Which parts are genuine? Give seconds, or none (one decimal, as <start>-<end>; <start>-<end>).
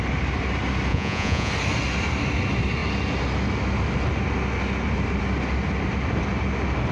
0.0-0.9; 1.5-6.9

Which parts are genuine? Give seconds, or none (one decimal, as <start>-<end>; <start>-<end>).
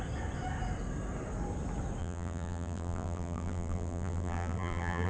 0.0-2.0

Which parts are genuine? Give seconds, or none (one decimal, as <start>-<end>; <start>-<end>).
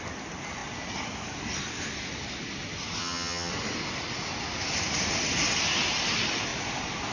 0.0-3.0; 3.5-7.1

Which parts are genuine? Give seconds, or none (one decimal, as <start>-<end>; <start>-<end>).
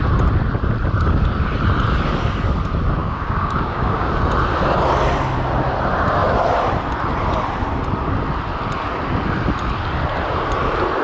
0.0-3.0; 4.1-11.0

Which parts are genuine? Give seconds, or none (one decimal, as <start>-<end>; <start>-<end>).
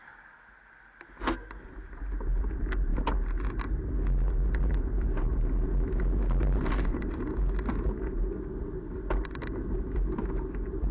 0.0-10.9